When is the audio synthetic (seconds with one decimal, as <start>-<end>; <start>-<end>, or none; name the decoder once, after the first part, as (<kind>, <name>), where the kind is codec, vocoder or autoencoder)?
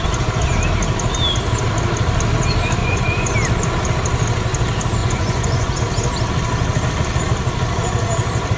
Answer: 2.8-3.3 (vocoder, Vocos); 5.0-5.8